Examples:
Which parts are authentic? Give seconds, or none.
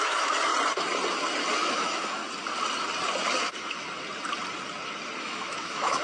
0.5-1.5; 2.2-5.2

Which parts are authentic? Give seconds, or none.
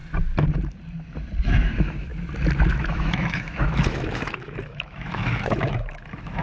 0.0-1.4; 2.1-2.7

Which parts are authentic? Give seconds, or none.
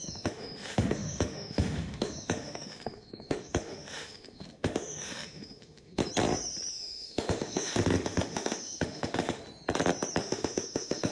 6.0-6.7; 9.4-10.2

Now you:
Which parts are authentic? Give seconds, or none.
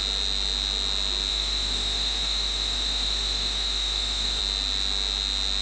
0.0-1.3; 4.4-5.6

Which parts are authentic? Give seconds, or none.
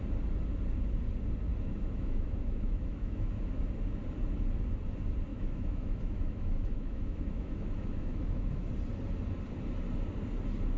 0.0-1.7; 3.4-5.3; 8.7-10.8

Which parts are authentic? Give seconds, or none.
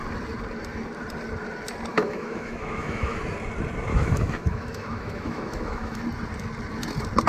0.0-1.9; 3.2-3.9; 6.0-7.3